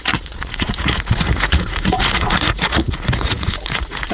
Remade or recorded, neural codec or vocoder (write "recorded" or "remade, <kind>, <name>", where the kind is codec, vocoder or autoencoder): remade, vocoder, Vocos